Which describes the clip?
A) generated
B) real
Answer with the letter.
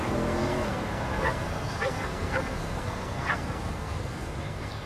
A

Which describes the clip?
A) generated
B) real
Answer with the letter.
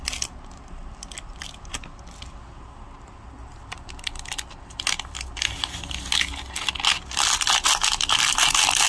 B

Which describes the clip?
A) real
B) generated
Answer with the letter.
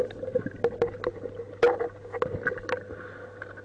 A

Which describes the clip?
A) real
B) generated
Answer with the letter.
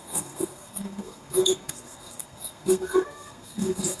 B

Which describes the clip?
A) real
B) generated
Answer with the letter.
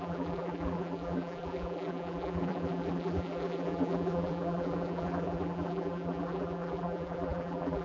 B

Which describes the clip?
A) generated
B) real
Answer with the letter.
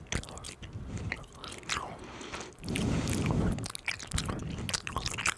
B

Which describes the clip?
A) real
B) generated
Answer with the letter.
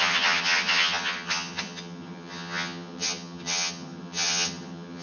B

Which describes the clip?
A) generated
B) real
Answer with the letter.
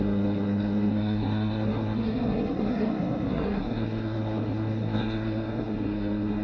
A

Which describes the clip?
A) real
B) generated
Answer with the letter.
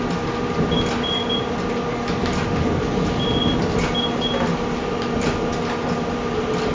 A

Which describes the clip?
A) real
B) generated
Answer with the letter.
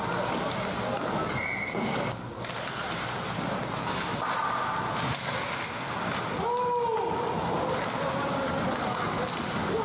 A